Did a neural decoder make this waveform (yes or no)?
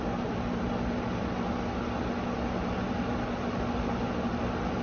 no